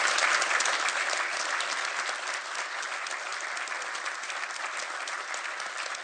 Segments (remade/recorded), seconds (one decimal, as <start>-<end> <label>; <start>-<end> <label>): 0.0-6.0 recorded